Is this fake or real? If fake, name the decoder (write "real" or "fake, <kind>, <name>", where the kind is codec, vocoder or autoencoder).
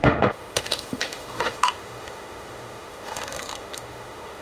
fake, autoencoder, DAC-VAE